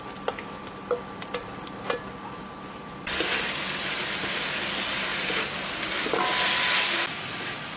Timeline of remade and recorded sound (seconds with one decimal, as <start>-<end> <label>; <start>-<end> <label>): 0.0-7.8 recorded